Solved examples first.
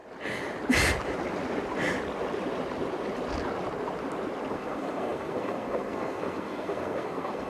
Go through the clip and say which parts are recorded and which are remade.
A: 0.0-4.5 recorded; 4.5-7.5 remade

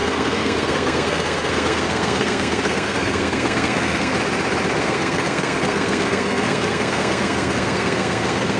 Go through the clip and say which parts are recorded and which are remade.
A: 0.0-4.1 remade; 4.1-4.8 recorded; 4.8-8.6 remade

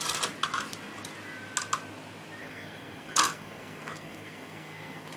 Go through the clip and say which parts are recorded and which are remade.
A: 0.0-2.4 recorded; 2.4-5.2 remade

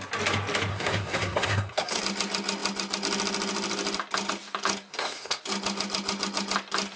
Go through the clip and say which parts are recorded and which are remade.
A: 0.0-0.7 recorded; 0.7-2.0 remade; 2.0-4.9 recorded; 4.9-5.4 remade; 5.4-7.0 recorded